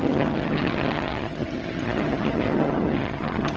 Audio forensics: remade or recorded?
remade